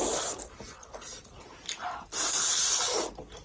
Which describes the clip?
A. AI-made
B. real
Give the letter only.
B